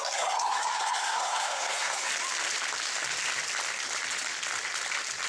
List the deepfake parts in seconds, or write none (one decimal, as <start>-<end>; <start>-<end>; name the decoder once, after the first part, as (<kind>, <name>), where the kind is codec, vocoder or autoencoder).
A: 0.0-2.1 (codec, SNAC)

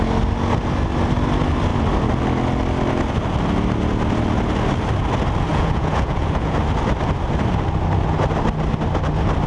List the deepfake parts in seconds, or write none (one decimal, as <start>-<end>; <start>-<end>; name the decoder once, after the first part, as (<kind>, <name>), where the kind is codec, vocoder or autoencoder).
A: 5.5-6.6 (vocoder, Vocos)

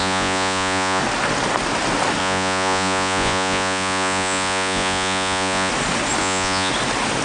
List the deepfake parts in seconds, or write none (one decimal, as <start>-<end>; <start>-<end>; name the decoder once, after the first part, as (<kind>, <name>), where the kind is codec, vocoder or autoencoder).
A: 0.0-1.0 (vocoder, Vocos); 2.2-5.7; 6.2-6.7

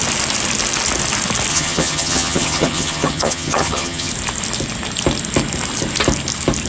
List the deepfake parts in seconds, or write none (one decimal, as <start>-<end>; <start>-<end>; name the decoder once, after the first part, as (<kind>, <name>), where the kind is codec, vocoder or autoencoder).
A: 1.5-4.1 (vocoder, HiFi-GAN)

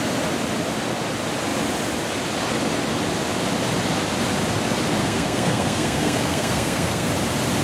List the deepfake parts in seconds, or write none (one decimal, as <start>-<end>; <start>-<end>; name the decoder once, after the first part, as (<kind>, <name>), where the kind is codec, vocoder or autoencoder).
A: 5.0-7.1 (codec, SNAC)